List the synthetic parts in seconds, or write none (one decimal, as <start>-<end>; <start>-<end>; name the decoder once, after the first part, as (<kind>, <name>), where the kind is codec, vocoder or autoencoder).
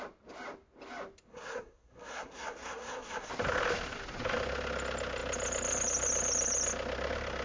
1.3-3.3 (codec, SNAC)